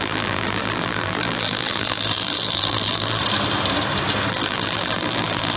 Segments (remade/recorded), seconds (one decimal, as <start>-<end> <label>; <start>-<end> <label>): 0.0-3.2 remade; 3.2-4.3 recorded; 4.3-5.6 remade